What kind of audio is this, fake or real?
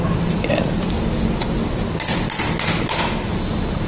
real